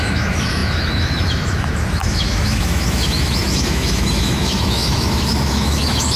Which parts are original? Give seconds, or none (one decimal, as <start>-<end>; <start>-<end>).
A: none